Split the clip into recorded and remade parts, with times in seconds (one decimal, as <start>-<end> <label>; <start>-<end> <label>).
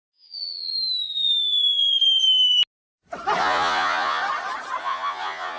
0.0-0.7 remade; 0.7-3.4 recorded; 3.4-4.2 remade; 4.2-4.8 recorded; 4.8-5.6 remade